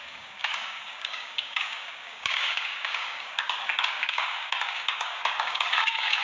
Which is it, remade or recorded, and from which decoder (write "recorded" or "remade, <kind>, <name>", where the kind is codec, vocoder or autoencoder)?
remade, codec, DAC